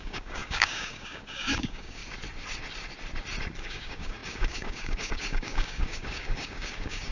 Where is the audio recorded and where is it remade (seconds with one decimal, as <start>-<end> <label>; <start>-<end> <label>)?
0.0-2.0 remade; 2.0-3.6 recorded; 3.6-7.1 remade